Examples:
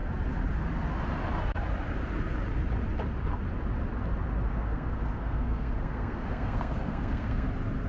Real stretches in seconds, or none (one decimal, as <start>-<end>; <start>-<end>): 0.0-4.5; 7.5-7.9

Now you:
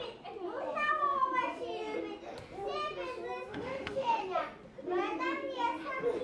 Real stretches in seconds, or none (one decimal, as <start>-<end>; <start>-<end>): 0.0-3.5; 4.2-6.2

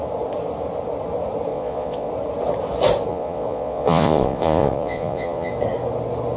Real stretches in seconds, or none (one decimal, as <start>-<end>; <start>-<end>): 0.0-1.5; 2.1-3.1; 5.5-6.4

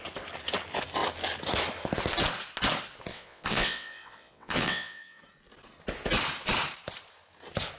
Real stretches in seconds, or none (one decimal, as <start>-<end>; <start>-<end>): 0.0-3.1; 5.2-7.8

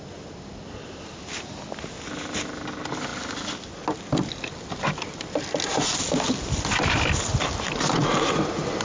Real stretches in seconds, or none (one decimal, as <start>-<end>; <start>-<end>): 0.0-8.8

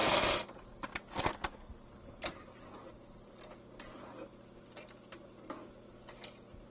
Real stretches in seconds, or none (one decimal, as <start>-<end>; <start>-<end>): 0.0-6.7

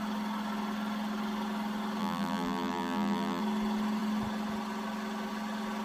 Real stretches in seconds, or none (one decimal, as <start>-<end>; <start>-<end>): 0.0-2.0; 3.4-5.8